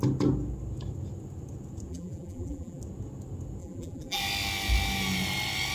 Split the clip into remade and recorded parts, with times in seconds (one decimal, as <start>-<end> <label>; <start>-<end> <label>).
0.0-1.9 recorded; 1.9-2.8 remade; 2.8-3.6 recorded; 3.6-4.2 remade; 4.2-5.7 recorded